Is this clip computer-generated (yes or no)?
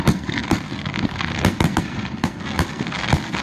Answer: yes